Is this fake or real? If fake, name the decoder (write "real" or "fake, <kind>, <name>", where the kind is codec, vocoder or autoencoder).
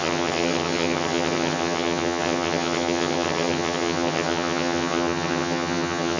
fake, vocoder, HiFi-GAN